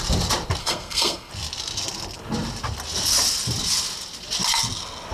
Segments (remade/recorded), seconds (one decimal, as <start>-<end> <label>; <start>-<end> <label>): 0.0-0.6 recorded; 0.6-1.3 remade; 1.3-5.1 recorded